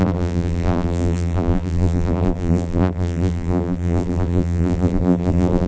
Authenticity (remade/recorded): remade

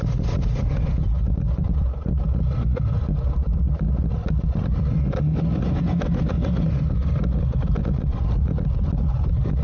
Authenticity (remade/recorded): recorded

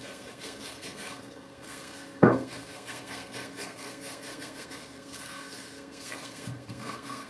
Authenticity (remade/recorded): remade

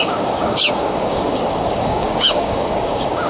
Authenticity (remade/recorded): remade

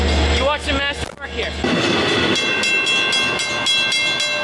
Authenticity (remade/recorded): recorded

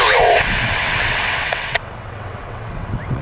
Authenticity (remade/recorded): remade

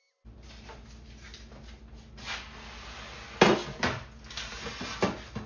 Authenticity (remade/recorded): recorded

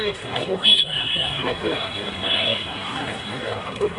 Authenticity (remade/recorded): remade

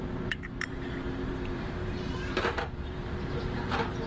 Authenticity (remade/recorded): remade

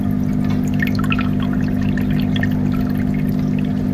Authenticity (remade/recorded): recorded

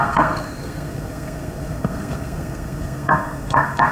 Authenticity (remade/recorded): remade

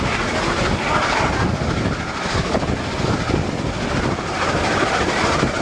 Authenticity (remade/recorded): recorded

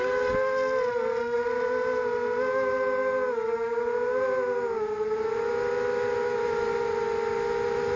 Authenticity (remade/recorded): recorded